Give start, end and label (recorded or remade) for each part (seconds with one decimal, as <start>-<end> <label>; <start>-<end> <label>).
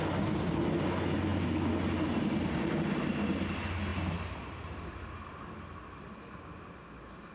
0.0-7.3 recorded